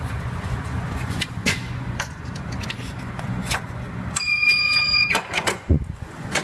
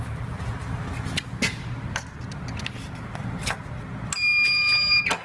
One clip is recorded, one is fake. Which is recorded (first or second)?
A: second